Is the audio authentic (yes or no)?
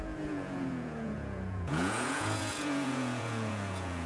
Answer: no